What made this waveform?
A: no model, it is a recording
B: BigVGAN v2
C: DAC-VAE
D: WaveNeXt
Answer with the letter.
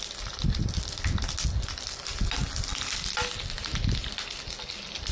A